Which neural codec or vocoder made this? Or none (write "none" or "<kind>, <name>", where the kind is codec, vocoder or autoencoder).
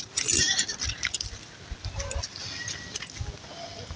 none